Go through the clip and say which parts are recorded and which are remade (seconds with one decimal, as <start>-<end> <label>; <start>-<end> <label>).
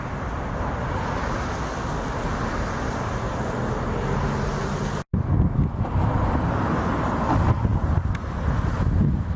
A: 0.0-9.4 recorded